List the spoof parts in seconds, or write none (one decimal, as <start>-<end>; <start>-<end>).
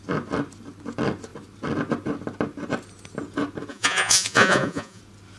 3.7-5.0